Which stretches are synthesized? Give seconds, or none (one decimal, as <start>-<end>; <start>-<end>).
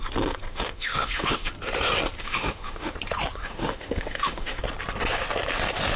0.5-1.5; 2.2-2.9; 3.4-4.6